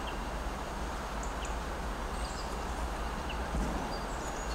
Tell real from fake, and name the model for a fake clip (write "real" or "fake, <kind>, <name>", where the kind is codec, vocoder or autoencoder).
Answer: real